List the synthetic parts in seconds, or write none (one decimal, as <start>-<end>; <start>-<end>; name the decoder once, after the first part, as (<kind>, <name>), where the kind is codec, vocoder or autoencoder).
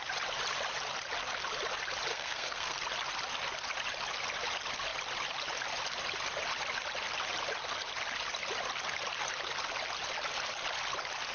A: 2.1-2.8 (codec, SNAC)